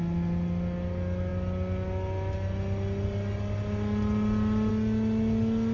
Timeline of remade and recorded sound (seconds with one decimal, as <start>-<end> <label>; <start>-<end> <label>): 0.0-5.7 recorded